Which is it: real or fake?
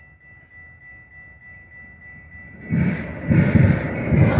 real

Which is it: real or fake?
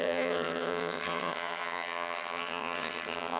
fake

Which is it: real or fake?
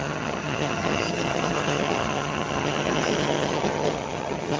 fake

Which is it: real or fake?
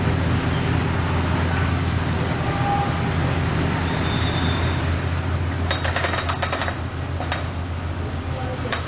real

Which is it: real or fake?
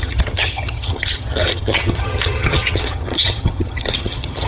fake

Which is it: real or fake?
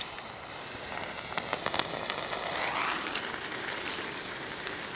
real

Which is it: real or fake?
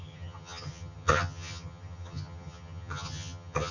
fake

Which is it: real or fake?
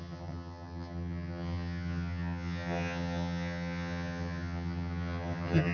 fake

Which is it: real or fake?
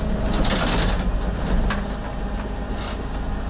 real